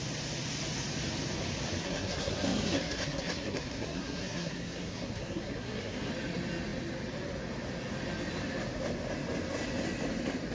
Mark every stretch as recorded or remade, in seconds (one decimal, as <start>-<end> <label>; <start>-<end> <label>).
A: 0.0-1.8 recorded; 1.8-6.1 remade; 6.1-10.5 recorded